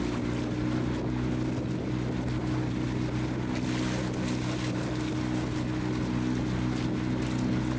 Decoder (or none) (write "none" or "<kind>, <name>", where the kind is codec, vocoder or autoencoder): none